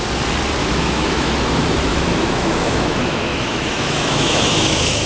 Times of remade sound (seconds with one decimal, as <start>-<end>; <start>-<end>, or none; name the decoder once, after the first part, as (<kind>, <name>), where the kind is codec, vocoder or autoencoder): 0.6-1.3 (autoencoder, DAC-VAE); 1.9-5.1